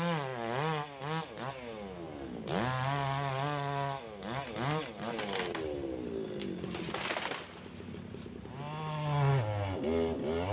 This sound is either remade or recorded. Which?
recorded